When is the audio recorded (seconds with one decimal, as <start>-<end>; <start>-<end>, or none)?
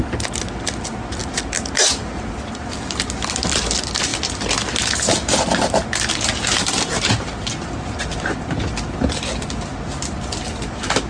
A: 0.0-11.1